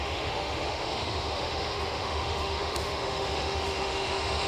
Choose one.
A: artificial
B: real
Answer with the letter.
A